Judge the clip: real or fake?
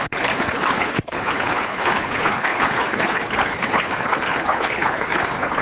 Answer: fake